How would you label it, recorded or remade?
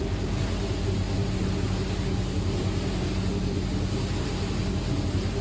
recorded